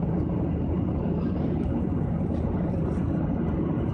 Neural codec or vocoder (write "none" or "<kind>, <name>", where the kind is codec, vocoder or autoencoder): none